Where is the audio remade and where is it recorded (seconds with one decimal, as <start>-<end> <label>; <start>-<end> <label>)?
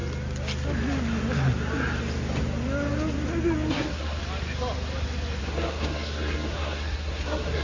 0.0-3.7 recorded; 3.7-4.2 remade; 4.2-5.4 recorded; 5.4-7.6 remade